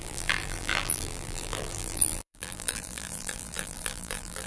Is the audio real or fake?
fake